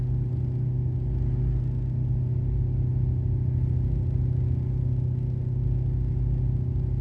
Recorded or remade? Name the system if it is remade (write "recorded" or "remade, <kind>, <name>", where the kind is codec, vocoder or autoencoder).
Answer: recorded